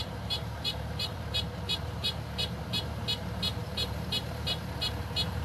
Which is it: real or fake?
fake